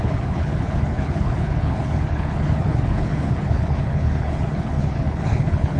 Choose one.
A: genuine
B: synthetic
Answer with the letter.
B